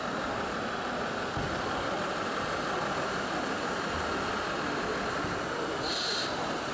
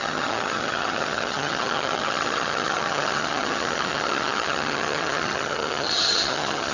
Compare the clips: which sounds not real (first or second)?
second